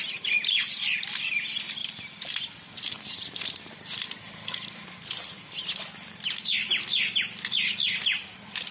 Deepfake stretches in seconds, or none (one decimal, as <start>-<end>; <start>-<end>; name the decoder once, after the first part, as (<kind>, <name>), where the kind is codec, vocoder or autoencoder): 0.0-1.4 (vocoder, BigVGAN v2); 1.8-3.6